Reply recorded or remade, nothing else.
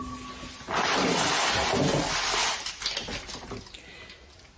recorded